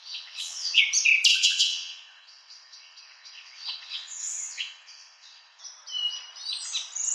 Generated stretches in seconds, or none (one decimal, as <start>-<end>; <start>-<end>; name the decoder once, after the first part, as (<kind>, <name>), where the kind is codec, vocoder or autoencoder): 0.0-0.8 (vocoder, WaveNeXt); 1.3-5.6